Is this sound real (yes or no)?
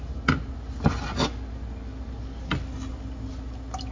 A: yes